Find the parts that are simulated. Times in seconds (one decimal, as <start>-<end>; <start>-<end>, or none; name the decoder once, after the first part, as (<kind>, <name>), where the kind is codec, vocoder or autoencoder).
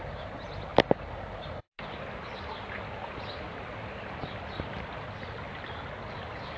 none